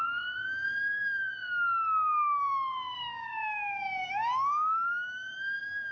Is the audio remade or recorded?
remade